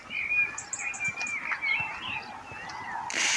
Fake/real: real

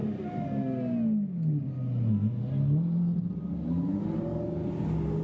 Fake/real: real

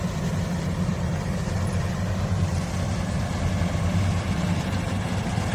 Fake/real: fake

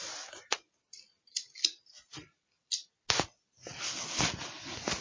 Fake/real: real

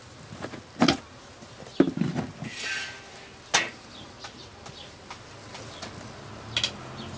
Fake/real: real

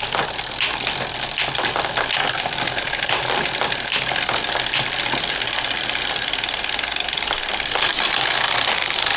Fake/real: real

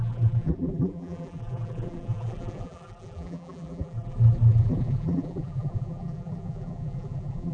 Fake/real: fake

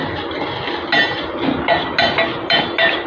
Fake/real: real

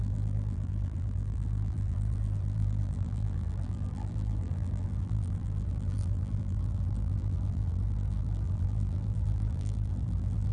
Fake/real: fake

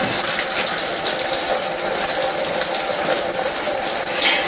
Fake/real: real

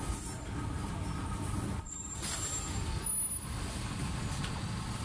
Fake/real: real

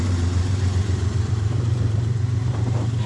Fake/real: fake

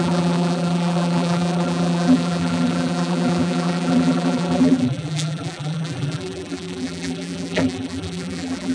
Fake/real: fake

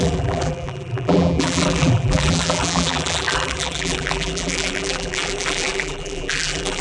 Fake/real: fake